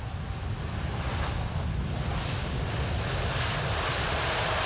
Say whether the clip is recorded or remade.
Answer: recorded